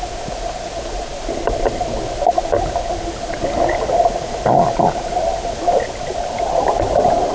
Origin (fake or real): real